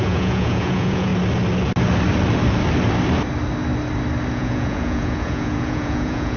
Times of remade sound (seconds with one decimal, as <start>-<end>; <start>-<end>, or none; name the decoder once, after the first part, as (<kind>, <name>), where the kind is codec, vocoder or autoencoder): 0.0-1.1 (vocoder, Vocos); 4.3-6.4